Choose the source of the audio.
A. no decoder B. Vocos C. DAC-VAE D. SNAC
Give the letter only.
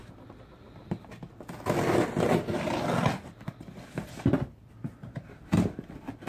A